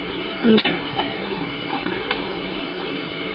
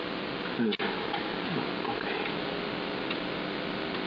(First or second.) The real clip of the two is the second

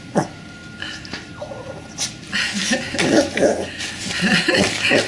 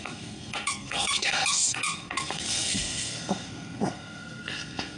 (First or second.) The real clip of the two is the first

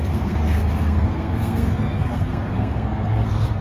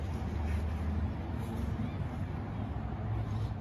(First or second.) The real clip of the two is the second